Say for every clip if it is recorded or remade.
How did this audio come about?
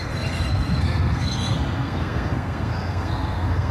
remade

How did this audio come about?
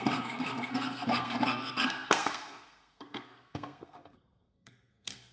remade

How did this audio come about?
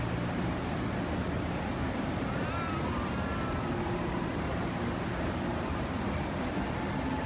recorded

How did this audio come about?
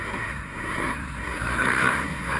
remade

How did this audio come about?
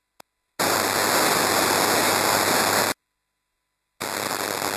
recorded